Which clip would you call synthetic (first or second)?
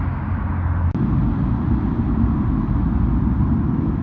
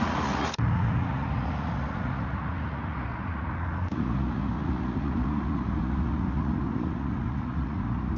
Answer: second